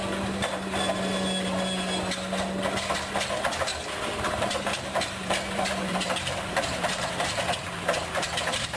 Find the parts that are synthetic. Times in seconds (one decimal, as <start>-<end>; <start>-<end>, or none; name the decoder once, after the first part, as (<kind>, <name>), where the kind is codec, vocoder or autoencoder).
3.7-7.4 (vocoder, BigVGAN v2)